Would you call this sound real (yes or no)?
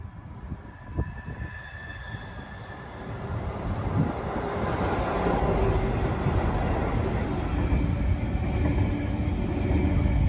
yes